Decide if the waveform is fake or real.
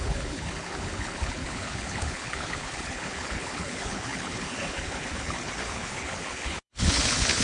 fake